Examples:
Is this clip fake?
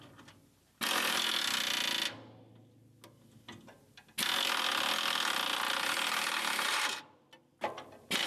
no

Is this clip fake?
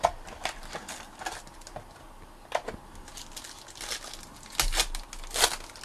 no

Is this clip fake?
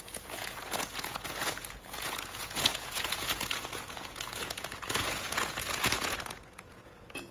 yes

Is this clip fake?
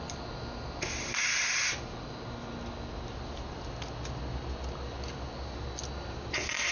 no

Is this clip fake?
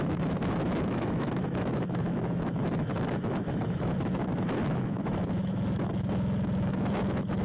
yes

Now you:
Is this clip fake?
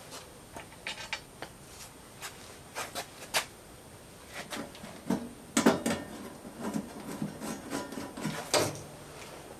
no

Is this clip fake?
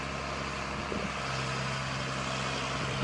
no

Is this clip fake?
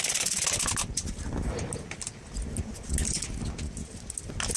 no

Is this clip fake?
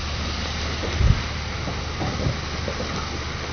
no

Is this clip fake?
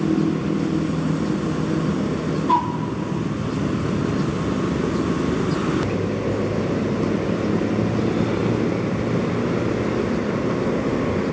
no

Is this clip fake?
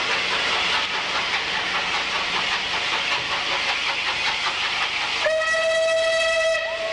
no